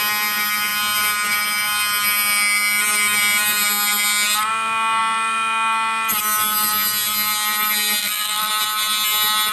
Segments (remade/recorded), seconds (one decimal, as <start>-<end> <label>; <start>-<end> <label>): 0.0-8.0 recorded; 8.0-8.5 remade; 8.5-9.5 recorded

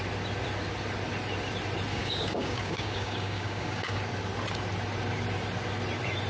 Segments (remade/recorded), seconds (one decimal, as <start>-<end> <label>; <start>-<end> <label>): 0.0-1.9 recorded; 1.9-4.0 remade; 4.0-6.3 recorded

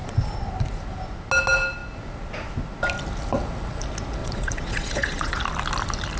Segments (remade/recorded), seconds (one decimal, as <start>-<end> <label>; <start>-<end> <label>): 0.0-0.5 remade; 0.5-4.2 recorded; 4.2-5.4 remade; 5.4-6.2 recorded